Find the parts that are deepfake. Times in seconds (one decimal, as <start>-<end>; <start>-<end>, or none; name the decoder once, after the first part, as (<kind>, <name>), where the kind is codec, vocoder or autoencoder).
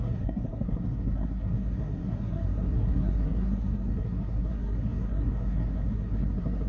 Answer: 0.0-6.7 (codec, SNAC)